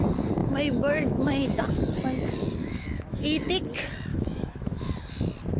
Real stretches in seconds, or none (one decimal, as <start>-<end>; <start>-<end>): 0.0-0.4; 1.6-2.6; 3.4-4.1; 4.9-5.6